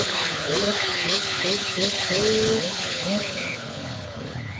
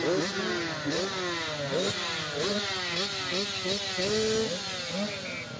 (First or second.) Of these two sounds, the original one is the second